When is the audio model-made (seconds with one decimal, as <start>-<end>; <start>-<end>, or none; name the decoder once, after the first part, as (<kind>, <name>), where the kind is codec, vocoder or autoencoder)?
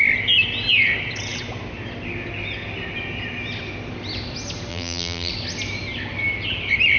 4.7-5.3 (vocoder, BigVGAN v2)